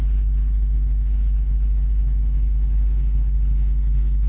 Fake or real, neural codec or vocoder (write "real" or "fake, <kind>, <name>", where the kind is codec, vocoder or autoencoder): fake, codec, HILCodec